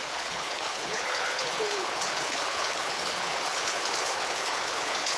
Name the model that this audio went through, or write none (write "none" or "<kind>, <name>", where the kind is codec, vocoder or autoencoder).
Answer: codec, HILCodec